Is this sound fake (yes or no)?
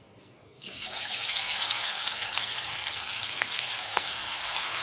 yes